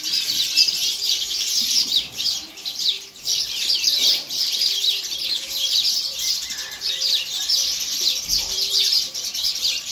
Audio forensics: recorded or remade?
remade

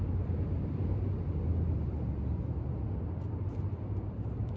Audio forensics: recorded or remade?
recorded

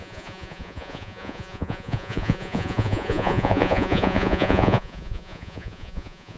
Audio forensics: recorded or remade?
remade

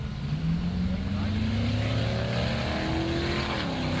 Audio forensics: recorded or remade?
recorded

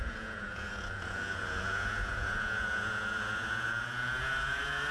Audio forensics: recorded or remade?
remade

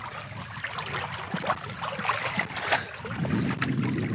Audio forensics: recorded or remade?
recorded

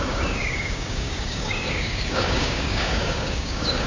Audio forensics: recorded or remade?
remade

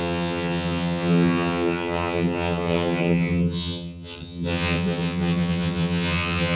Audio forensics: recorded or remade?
remade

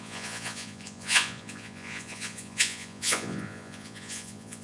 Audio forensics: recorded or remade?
remade